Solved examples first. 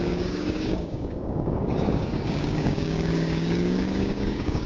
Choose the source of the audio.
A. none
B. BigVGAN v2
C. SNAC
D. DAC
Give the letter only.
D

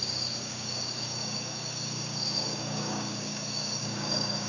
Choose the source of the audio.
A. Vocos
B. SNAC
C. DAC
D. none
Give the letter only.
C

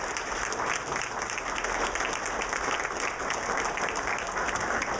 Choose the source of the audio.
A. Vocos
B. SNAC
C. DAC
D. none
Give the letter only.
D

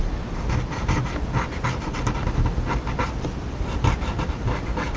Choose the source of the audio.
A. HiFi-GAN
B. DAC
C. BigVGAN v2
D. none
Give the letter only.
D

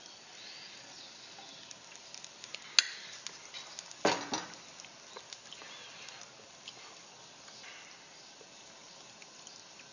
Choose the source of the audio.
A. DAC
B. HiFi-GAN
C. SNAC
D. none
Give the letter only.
D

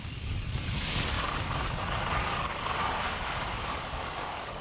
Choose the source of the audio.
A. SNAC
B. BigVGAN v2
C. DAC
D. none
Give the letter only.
C